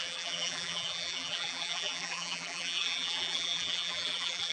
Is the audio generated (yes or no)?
yes